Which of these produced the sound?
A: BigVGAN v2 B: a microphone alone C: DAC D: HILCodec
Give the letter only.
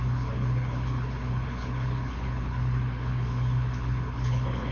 D